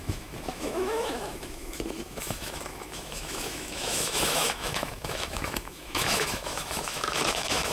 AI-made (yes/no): yes